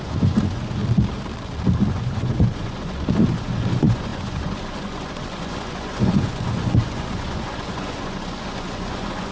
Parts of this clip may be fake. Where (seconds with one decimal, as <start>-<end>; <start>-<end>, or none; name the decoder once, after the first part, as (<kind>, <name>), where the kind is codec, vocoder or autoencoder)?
0.0-0.8 (vocoder, Vocos); 1.9-9.3